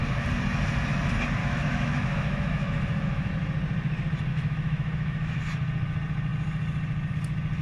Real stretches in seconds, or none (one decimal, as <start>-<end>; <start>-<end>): 0.0-1.4; 3.3-4.3; 5.4-7.6